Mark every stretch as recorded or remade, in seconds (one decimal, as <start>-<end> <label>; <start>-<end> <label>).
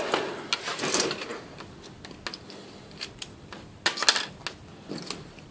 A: 0.0-5.5 recorded